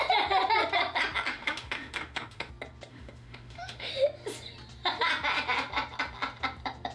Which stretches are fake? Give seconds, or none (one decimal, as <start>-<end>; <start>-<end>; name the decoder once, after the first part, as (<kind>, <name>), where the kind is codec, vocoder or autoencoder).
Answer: 1.3-2.5 (autoencoder, DAC-VAE); 2.9-3.9